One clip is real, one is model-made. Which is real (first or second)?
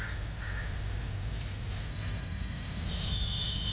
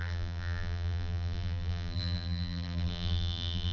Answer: first